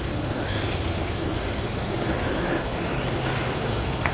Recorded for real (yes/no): no